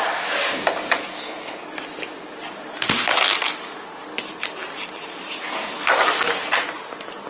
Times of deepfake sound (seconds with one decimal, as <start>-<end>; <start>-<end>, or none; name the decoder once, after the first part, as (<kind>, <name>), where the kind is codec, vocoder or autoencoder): 1.1-1.6 (codec, SNAC)

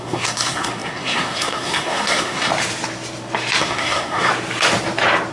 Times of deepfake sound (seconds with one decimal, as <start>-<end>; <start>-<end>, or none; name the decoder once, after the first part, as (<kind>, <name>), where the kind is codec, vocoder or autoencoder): 0.0-2.5 (codec, SNAC); 3.6-4.3

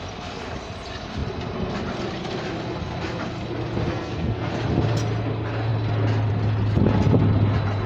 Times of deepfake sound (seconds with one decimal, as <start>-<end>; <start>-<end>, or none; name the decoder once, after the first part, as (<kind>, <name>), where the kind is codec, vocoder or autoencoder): 3.9-4.5 (codec, SNAC)

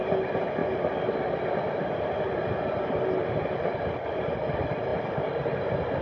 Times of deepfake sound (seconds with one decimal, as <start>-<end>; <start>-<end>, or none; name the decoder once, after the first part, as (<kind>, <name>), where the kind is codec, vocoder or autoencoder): none

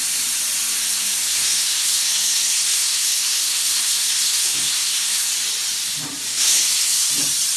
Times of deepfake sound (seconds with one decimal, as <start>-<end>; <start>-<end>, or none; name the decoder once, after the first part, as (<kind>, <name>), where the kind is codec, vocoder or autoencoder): 0.8-5.3 (codec, SNAC); 6.3-7.1

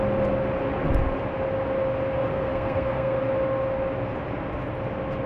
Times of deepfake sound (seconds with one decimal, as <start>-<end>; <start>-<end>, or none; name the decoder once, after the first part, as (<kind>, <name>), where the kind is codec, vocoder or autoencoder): 2.3-3.2 (codec, SNAC)

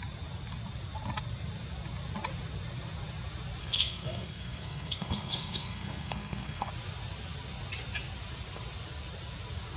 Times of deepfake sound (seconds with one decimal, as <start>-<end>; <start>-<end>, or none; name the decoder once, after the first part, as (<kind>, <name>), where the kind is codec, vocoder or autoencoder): 3.6-6.7 (codec, SNAC)